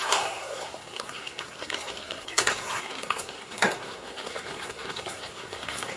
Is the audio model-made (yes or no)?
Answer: yes